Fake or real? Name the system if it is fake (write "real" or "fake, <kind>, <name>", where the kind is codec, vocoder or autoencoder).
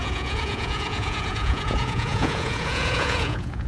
fake, vocoder, Vocos